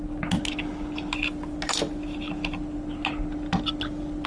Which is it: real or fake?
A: real